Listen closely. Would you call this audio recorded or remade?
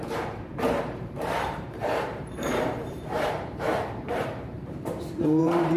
remade